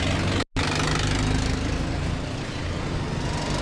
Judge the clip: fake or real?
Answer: real